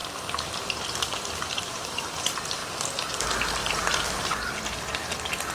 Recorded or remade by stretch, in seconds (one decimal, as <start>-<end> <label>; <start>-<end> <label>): 0.0-2.0 remade; 2.0-3.6 recorded; 3.6-4.6 remade; 4.6-5.5 recorded